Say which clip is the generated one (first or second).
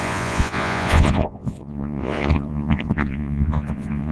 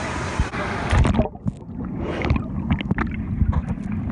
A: first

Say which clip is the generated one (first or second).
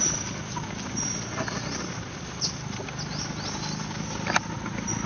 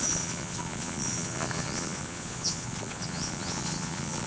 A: second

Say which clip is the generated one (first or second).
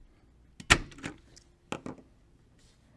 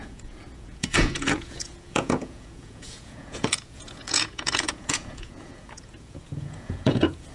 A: second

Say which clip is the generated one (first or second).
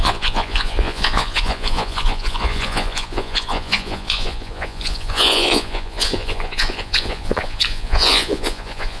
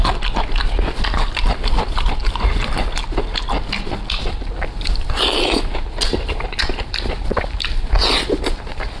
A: first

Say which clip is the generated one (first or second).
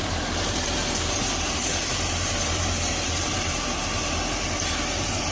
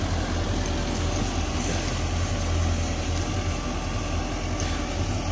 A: first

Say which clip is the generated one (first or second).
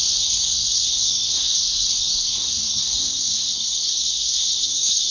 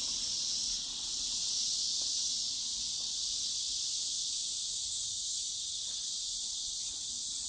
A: first